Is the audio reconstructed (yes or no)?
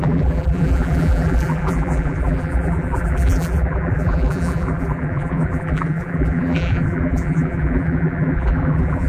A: yes